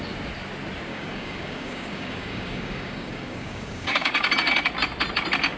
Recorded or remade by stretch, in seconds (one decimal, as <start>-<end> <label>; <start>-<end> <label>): 0.0-0.9 recorded; 0.9-4.1 remade; 4.1-5.6 recorded